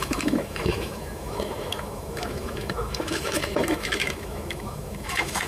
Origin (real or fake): fake